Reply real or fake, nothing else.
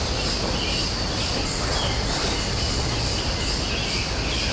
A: real